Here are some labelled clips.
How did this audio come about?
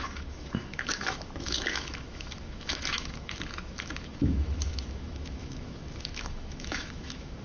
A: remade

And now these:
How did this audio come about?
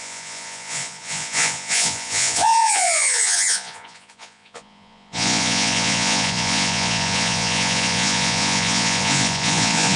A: remade